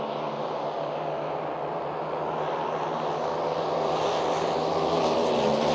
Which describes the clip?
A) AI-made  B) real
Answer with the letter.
B